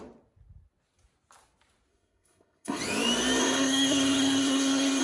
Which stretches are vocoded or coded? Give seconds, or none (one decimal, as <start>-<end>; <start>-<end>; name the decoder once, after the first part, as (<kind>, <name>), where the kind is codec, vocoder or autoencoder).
1.9-2.8 (codec, SNAC); 3.4-5.0